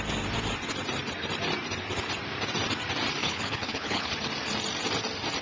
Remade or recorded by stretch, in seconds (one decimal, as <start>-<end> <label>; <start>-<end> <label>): 0.0-3.2 recorded; 3.2-4.1 remade; 4.1-5.4 recorded